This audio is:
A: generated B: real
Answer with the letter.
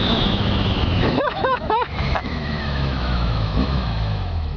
A